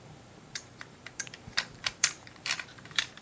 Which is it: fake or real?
fake